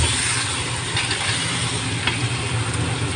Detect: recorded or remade recorded